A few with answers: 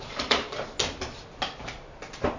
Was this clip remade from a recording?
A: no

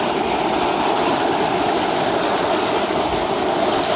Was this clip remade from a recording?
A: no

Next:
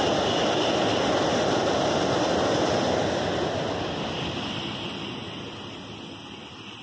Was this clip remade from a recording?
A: no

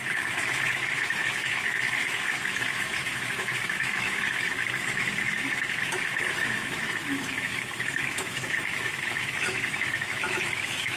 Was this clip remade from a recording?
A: yes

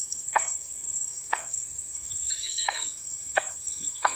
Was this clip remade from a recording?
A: yes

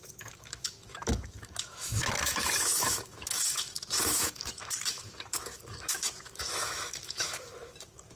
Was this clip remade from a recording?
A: yes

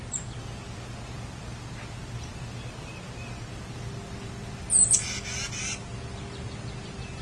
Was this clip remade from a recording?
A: no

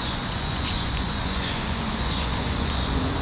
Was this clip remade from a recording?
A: yes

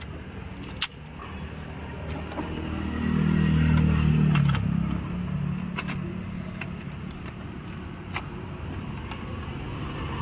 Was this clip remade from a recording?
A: no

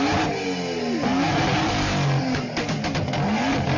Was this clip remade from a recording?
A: no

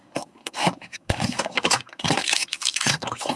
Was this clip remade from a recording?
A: yes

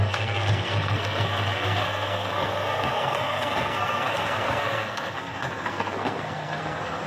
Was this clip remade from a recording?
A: yes